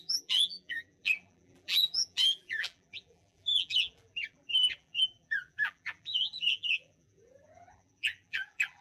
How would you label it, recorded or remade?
remade